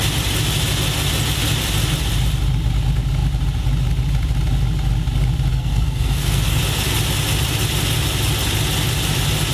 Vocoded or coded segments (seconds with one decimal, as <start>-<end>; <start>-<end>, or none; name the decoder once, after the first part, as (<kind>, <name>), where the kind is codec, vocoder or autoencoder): 5.5-6.6 (codec, SNAC)